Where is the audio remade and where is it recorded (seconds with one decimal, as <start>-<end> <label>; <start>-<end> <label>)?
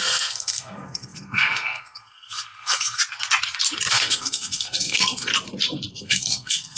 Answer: 0.0-3.0 remade; 3.0-3.9 recorded; 3.9-5.3 remade; 5.3-5.9 recorded; 5.9-6.8 remade